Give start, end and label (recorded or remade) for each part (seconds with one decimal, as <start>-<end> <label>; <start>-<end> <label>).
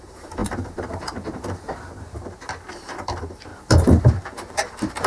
0.0-0.4 remade; 0.4-2.7 recorded; 2.7-3.5 remade; 3.5-4.0 recorded; 4.0-5.1 remade